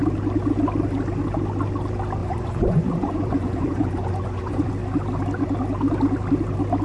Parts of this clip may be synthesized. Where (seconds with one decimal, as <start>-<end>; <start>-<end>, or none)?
2.2-4.7